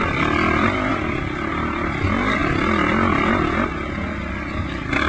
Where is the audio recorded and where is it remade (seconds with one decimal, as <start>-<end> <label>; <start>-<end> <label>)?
0.0-5.1 recorded